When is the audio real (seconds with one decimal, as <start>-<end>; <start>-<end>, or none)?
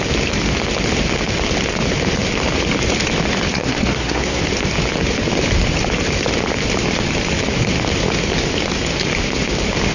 0.0-3.5; 4.4-9.9